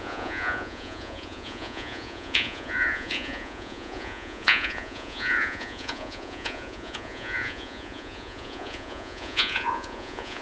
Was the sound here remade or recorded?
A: remade